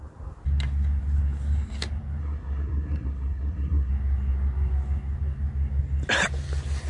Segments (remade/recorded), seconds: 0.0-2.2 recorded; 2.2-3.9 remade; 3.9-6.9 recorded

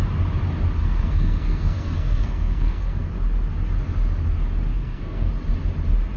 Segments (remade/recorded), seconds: 0.0-0.8 recorded; 0.8-3.1 remade; 3.1-4.7 recorded; 4.7-5.3 remade; 5.3-6.2 recorded

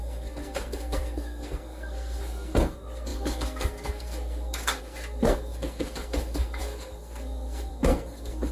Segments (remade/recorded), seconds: 0.0-8.5 remade

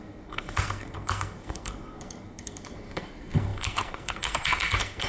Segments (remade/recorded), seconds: 0.0-5.1 remade